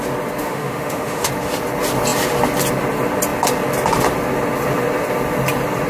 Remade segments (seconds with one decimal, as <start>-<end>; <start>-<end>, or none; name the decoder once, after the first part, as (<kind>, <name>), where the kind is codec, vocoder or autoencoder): 0.4-1.3 (autoencoder, DAC-VAE)